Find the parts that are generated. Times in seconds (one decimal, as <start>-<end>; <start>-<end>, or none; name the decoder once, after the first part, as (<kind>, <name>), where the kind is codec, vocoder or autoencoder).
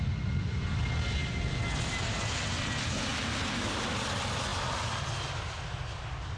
none